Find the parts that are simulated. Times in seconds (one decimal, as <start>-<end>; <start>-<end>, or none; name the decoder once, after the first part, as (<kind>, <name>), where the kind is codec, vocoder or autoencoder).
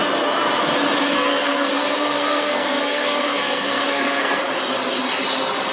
1.0-4.4 (codec, SNAC)